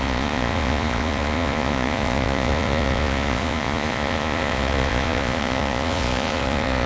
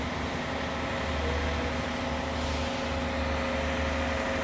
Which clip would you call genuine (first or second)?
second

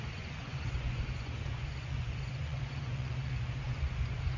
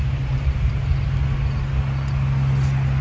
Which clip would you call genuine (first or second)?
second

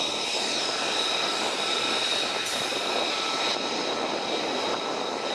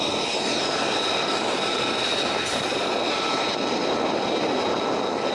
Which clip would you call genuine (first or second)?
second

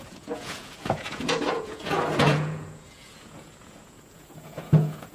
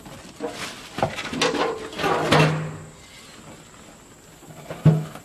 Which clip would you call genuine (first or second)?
second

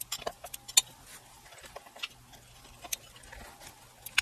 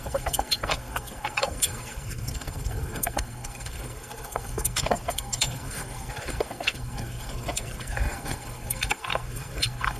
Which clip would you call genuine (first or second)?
first